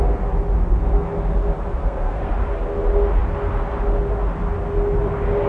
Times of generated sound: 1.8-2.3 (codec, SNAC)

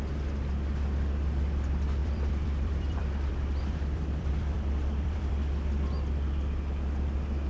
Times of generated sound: 2.0-5.3 (vocoder, BigVGAN v2)

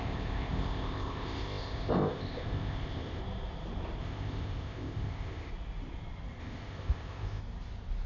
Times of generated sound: 0.0-3.2 (codec, ZipCodec); 4.0-5.5; 6.4-7.4